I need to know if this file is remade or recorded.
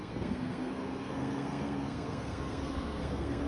remade